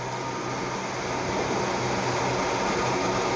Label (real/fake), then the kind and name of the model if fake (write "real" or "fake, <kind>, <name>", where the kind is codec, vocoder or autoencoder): real